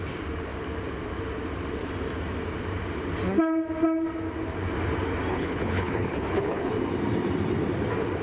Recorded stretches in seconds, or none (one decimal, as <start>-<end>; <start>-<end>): 0.0-5.3; 6.7-8.2